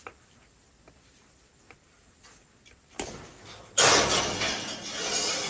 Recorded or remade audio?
recorded